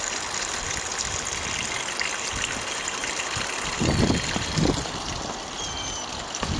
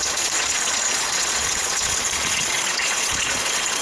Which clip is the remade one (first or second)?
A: second